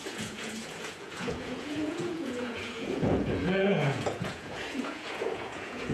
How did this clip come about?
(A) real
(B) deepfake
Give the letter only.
B